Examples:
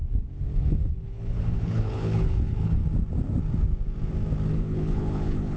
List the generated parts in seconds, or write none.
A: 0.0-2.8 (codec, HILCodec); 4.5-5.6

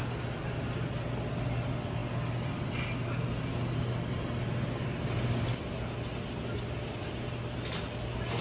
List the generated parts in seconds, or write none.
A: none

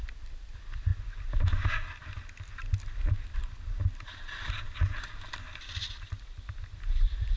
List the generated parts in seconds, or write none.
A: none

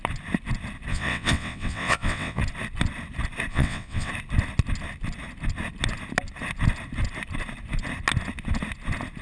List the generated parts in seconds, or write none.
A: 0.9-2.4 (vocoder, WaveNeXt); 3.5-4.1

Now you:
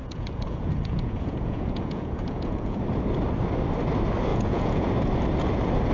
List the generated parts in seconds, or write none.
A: 0.0-2.8 (vocoder, Vocos); 4.3-4.9

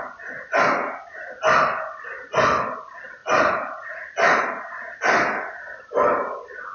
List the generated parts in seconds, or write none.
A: 3.2-4.4 (vocoder, Vocos)

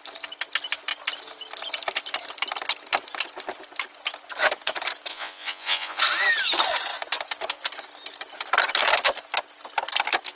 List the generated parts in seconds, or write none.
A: 5.1-6.0 (vocoder, Vocos)